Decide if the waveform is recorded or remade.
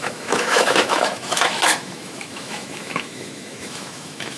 remade